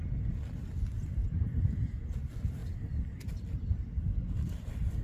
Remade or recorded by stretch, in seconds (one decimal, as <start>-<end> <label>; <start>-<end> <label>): 0.0-5.0 recorded